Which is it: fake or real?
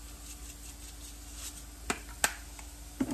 real